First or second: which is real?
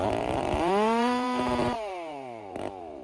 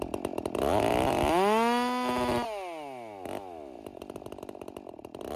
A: second